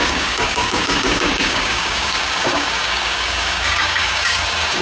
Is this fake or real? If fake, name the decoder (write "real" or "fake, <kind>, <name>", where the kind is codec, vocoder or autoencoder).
fake, codec, DAC